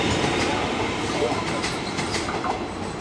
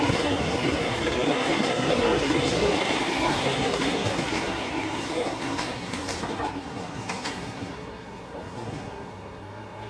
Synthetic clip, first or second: second